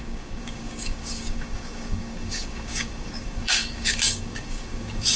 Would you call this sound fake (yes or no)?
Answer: yes